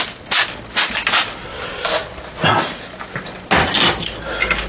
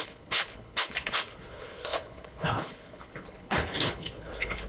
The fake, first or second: second